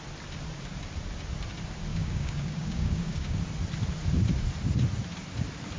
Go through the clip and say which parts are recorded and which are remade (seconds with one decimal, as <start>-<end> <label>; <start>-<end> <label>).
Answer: 0.0-1.9 recorded; 1.9-3.4 remade; 3.4-5.8 recorded